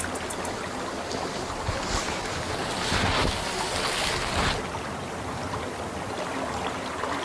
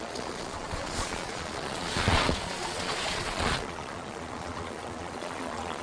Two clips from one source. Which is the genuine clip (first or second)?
first